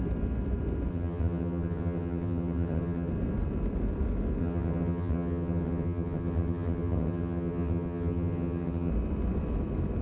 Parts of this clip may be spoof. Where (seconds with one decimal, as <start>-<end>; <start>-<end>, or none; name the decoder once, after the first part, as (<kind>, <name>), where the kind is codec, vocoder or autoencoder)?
0.9-3.1 (vocoder, HiFi-GAN); 4.4-8.9